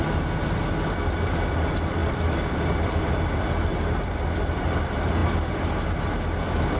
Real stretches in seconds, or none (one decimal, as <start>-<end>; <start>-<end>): 0.0-2.0; 3.1-3.7; 4.6-6.8